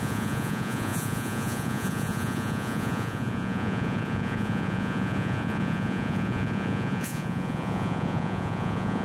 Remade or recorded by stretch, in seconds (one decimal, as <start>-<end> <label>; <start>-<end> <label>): 0.0-9.0 remade